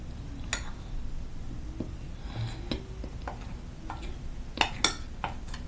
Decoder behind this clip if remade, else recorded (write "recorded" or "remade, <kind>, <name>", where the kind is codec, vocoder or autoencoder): recorded